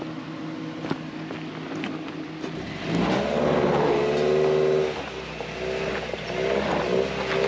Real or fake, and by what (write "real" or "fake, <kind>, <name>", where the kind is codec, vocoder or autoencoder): real